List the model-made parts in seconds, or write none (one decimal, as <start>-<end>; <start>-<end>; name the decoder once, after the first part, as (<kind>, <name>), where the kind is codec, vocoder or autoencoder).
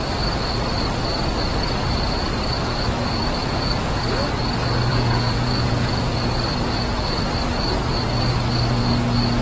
3.4-4.0 (vocoder, Vocos); 4.9-6.0